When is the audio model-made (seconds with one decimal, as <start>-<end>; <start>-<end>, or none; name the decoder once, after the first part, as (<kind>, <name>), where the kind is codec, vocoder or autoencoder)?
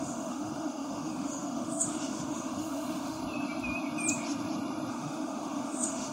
0.0-3.2 (autoencoder, DAC-VAE); 4.9-6.1